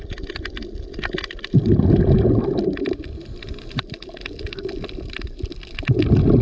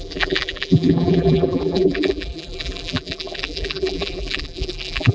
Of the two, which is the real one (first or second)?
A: first